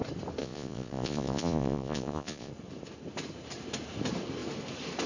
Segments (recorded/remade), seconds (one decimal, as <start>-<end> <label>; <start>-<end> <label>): 0.0-0.4 recorded; 0.4-2.5 remade; 2.5-5.1 recorded